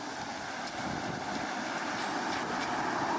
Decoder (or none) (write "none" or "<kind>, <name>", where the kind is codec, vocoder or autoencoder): none